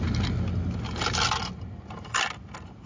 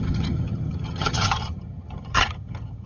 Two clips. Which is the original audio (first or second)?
first